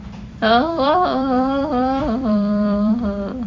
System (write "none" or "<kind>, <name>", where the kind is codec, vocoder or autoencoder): vocoder, BigVGAN v2